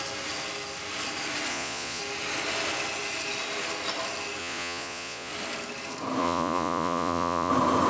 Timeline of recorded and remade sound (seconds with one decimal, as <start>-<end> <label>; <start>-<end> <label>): 0.0-1.5 recorded; 1.5-2.0 remade; 2.0-4.4 recorded; 4.4-5.3 remade; 5.3-6.2 recorded; 6.2-7.5 remade; 7.5-7.9 recorded